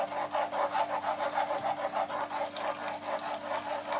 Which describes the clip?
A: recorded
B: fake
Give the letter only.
A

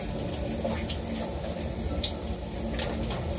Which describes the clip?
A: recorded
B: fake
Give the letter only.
A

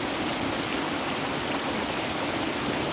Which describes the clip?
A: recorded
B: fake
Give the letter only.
A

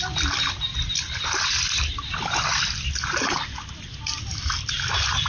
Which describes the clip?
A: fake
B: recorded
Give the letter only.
B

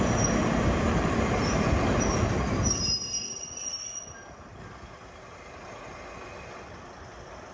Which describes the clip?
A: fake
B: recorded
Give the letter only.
B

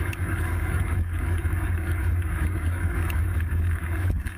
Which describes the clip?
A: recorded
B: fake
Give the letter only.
B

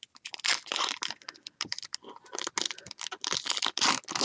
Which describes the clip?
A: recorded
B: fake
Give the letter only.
A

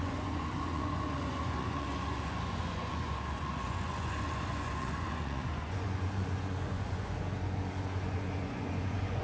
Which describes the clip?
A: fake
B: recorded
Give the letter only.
A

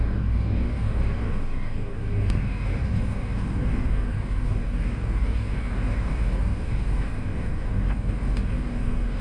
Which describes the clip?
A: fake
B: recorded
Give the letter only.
A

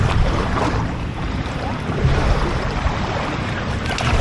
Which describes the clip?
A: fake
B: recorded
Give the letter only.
A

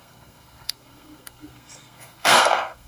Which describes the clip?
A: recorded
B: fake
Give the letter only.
B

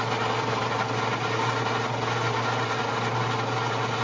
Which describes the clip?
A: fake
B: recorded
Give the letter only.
B